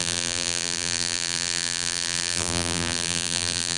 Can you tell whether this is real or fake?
fake